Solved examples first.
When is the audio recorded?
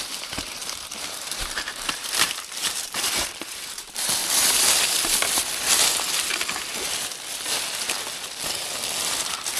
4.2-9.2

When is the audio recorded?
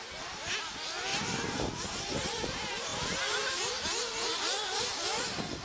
0.0-1.1; 1.7-5.6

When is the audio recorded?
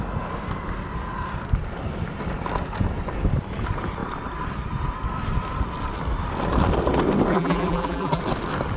0.0-7.3; 8.2-8.8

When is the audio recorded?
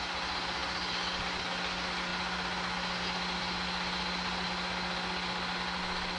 0.0-6.2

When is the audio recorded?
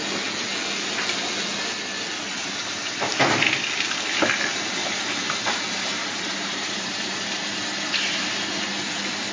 0.0-2.3; 3.1-4.8; 8.7-9.3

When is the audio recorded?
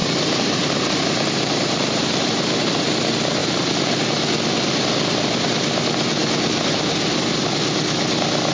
2.6-8.5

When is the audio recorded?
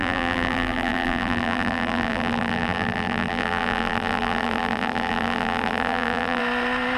6.4-7.0